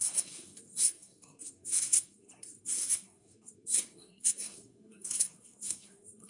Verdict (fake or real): fake